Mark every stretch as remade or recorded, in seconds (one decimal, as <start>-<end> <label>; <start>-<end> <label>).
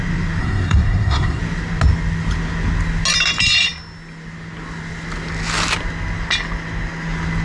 0.0-0.4 recorded; 0.4-1.4 remade; 1.4-7.4 recorded